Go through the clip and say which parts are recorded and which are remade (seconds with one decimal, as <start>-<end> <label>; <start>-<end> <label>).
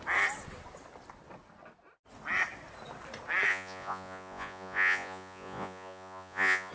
0.0-3.5 recorded; 3.5-6.7 remade